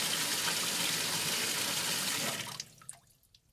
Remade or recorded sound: recorded